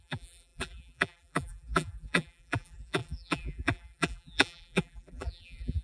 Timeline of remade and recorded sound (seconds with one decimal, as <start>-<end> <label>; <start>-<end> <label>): 0.0-5.8 remade

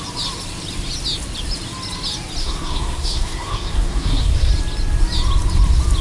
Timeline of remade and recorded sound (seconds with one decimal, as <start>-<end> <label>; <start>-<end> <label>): 0.0-2.4 recorded; 2.4-4.5 remade; 4.5-6.0 recorded

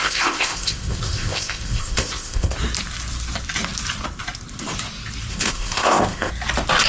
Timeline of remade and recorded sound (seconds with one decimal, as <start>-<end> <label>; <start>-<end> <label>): 0.0-2.5 remade; 2.5-5.3 recorded; 5.3-6.3 remade; 6.3-6.9 recorded

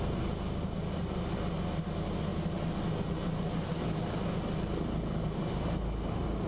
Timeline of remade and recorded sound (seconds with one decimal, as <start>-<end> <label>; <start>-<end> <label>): 0.0-6.5 recorded

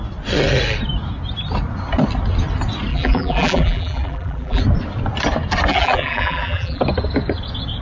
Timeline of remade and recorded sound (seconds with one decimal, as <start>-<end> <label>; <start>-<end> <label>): 0.0-2.9 recorded; 2.9-4.6 remade; 4.6-5.7 recorded; 5.7-6.8 remade; 6.8-7.8 recorded

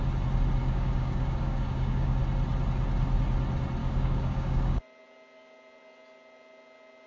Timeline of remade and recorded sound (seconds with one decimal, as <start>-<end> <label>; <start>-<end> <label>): 0.0-0.6 recorded; 0.6-2.2 remade; 2.2-3.8 recorded; 3.8-4.8 remade; 4.8-7.1 recorded

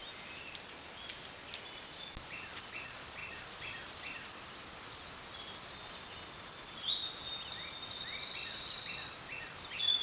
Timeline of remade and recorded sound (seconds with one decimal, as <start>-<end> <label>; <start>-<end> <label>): 0.0-10.0 recorded

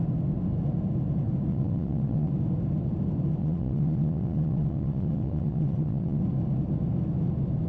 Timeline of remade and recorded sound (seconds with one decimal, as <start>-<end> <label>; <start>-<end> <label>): 0.0-1.5 recorded; 1.5-2.3 remade; 2.3-3.4 recorded; 3.4-6.2 remade; 6.2-7.7 recorded